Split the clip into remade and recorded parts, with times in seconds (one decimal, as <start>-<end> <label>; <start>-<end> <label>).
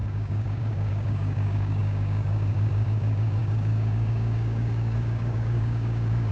0.0-6.3 remade